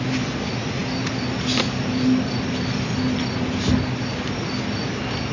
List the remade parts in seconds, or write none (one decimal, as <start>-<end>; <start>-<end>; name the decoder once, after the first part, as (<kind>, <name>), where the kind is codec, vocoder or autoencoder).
none